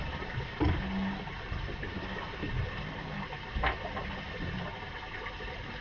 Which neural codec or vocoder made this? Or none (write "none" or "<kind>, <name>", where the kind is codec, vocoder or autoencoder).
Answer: none